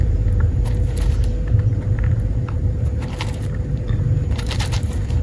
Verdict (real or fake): fake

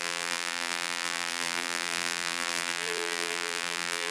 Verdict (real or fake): fake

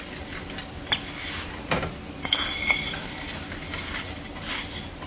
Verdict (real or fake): real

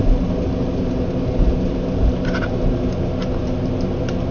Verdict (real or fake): real